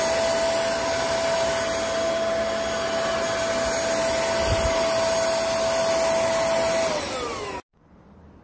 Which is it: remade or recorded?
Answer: recorded